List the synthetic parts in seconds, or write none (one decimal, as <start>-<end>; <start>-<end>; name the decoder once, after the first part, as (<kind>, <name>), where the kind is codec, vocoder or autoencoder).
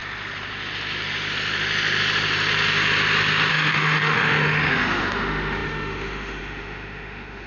3.5-7.5 (autoencoder, DAC-VAE)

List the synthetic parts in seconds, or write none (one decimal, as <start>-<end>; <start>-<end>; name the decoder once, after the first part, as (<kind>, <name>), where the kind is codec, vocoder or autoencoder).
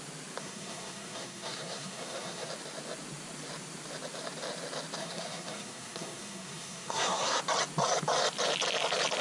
0.4-2.5 (codec, SNAC); 5.0-7.4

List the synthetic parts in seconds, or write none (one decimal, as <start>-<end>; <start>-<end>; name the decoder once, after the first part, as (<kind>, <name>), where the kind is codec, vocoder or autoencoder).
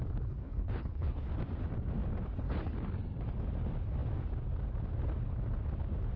0.4-1.3 (codec, HILCodec)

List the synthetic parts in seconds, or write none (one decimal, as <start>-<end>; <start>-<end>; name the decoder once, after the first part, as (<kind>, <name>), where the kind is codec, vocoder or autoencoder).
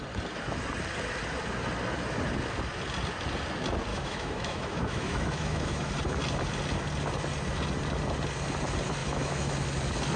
3.9-5.9 (autoencoder, DAC-VAE); 9.0-9.5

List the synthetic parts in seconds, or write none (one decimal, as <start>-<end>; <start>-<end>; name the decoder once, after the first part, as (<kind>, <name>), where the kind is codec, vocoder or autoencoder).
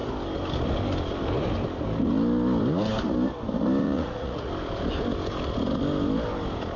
3.8-4.5 (vocoder, Vocos)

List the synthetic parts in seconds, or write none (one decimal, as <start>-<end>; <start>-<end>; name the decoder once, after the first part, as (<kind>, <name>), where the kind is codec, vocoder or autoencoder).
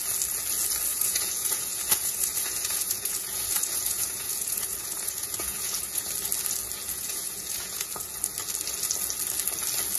0.9-6.1 (vocoder, Vocos); 6.9-8.0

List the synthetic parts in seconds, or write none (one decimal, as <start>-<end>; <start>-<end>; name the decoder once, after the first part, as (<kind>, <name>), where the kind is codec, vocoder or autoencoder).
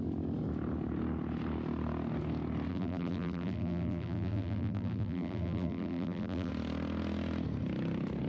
2.7-6.5 (vocoder, BigVGAN v2)